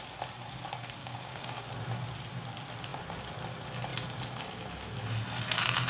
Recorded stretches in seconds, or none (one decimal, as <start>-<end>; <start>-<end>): 0.0-1.0; 1.7-5.9